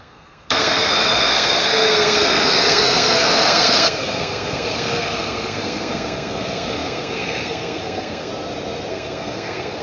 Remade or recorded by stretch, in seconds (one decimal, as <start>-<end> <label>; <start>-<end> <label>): 0.0-8.3 remade; 8.3-8.9 recorded; 8.9-9.8 remade